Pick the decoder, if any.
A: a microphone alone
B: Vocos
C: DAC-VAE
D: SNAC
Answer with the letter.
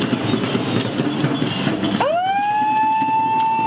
A